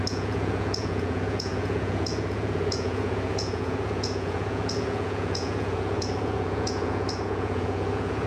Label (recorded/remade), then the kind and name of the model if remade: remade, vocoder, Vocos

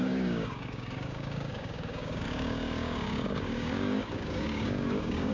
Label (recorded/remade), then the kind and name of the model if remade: remade, codec, DAC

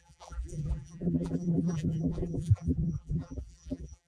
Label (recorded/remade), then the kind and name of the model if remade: remade, vocoder, BigVGAN v2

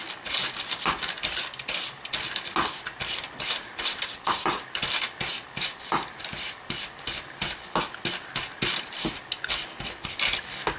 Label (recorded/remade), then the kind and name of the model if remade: recorded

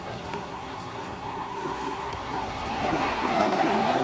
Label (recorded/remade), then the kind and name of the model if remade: remade, codec, SNAC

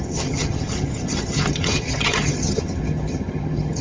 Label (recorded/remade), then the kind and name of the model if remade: remade, vocoder, HiFi-GAN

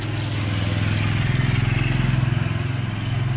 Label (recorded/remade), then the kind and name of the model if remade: recorded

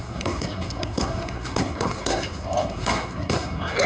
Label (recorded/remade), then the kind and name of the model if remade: remade, codec, SNAC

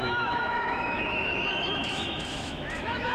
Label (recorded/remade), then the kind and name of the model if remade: remade, autoencoder, DAC-VAE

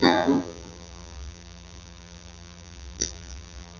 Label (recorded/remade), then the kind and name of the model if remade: remade, vocoder, BigVGAN v2